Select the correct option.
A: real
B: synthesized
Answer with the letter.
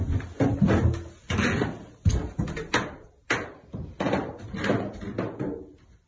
A